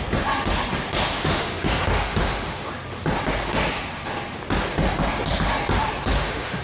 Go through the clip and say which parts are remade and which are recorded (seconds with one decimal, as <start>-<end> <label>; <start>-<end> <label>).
0.0-1.2 recorded; 1.2-2.7 remade; 2.7-6.1 recorded; 6.1-6.6 remade